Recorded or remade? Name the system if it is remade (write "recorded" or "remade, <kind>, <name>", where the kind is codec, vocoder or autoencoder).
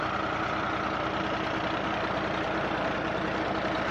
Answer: recorded